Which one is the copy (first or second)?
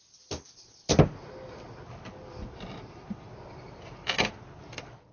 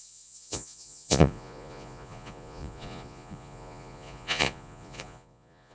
second